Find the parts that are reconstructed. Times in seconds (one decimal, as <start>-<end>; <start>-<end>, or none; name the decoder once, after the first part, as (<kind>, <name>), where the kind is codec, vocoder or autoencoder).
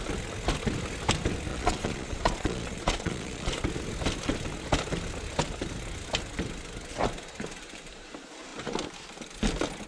1.5-3.6 (vocoder, Vocos)